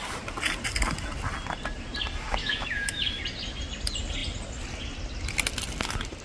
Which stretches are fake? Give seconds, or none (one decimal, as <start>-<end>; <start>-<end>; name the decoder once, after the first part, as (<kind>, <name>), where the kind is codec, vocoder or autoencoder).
2.4-3.2 (autoencoder, DAC-VAE)

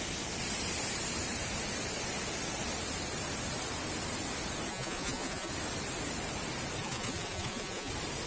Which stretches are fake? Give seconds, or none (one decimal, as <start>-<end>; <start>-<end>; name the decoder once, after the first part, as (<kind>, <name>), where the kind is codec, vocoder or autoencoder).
4.7-5.5 (vocoder, Vocos); 6.8-7.9

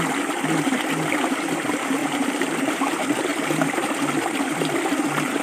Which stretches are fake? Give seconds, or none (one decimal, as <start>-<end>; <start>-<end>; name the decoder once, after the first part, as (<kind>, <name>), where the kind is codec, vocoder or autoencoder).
2.0-2.9 (vocoder, BigVGAN v2)

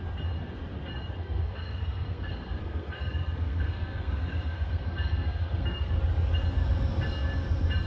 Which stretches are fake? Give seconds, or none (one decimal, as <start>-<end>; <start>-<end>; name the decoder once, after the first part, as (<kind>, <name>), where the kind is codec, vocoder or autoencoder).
1.2-5.9 (codec, SNAC)

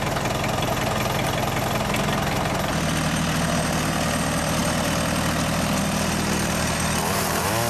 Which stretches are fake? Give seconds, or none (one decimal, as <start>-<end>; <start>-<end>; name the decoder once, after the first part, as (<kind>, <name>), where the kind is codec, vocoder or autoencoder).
none

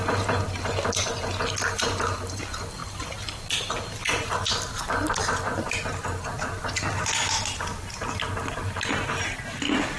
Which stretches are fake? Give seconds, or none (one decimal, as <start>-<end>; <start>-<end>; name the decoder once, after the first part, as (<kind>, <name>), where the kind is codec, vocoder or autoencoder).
none

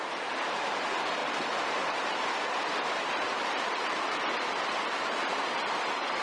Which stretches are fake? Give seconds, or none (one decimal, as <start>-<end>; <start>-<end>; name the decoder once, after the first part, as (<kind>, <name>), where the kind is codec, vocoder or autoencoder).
0.0-6.2 (vocoder, BigVGAN v2)

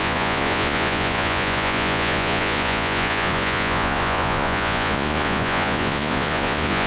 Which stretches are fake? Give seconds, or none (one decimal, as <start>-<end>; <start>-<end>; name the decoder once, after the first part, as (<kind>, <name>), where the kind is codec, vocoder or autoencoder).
0.0-6.9 (vocoder, Vocos)